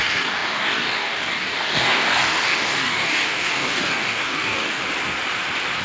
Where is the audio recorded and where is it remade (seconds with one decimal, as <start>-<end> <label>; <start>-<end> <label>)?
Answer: 0.0-4.8 remade; 4.8-5.8 recorded